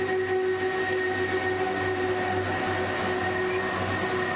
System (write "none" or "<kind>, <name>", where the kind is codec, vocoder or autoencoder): none